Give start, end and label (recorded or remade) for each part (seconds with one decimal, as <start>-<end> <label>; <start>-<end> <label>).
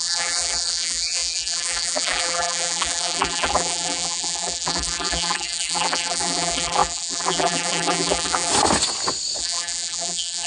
0.0-8.5 remade; 8.5-9.4 recorded; 9.4-10.5 remade